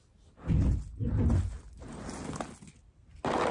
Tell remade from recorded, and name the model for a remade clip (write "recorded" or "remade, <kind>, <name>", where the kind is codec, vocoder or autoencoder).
recorded